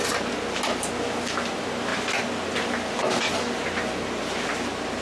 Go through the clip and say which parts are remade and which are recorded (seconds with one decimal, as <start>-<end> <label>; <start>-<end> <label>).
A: 0.0-5.0 recorded